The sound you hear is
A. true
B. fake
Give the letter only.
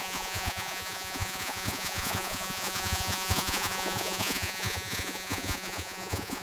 B